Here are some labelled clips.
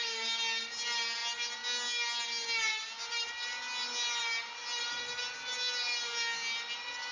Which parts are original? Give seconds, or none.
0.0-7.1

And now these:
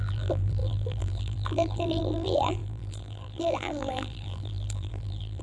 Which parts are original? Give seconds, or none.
none

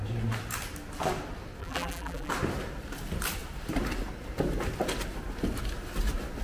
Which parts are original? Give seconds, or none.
0.0-1.6; 2.3-6.4

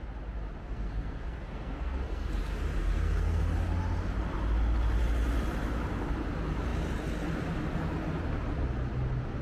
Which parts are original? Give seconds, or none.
0.0-0.6; 2.3-2.8; 3.4-9.4

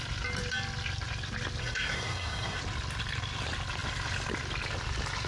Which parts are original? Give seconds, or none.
0.0-1.6; 2.6-5.3